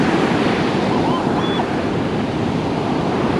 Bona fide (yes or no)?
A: yes